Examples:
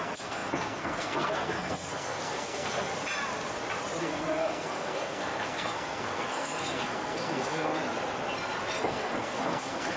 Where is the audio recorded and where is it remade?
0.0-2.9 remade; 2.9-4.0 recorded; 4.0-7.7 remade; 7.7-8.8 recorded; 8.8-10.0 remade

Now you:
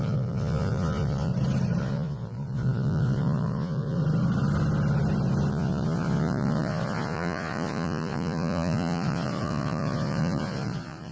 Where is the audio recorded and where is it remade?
0.0-1.3 remade; 1.3-1.8 recorded; 1.8-4.0 remade; 4.0-5.5 recorded; 5.5-11.1 remade

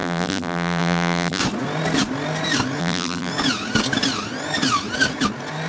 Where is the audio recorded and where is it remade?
0.0-1.4 remade; 1.4-2.8 recorded; 2.8-3.3 remade; 3.3-5.7 recorded